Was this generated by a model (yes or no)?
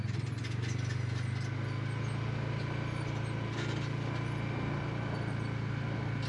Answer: no